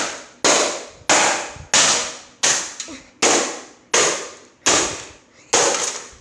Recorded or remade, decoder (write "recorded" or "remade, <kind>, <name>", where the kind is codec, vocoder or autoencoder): recorded